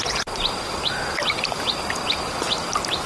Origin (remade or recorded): recorded